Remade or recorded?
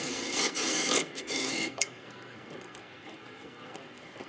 remade